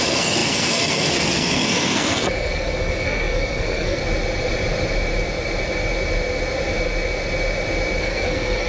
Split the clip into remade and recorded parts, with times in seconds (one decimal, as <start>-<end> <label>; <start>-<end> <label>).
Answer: 0.0-4.0 remade; 4.0-8.0 recorded; 8.0-8.7 remade